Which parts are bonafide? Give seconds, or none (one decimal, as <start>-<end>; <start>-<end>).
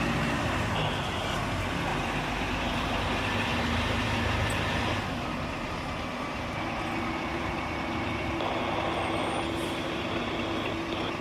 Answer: 0.0-1.9; 3.1-3.5; 4.8-7.3; 8.6-11.2